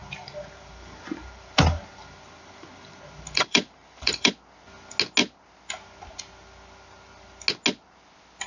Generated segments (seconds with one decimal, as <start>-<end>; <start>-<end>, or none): 0.0-4.3